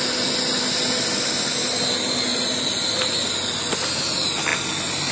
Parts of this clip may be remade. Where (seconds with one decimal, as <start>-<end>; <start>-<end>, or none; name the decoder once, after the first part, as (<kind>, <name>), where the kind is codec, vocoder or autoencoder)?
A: none